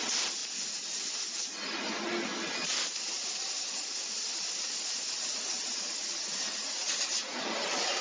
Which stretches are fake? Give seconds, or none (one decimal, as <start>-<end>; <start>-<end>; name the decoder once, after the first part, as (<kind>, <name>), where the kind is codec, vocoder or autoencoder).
none